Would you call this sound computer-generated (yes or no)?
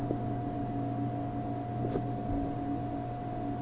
no